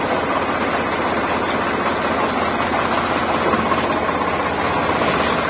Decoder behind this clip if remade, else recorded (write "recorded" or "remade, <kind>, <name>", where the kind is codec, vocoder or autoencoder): recorded